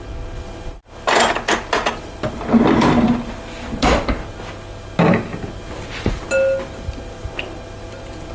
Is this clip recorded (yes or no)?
yes